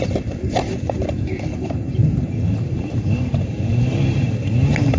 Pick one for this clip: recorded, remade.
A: remade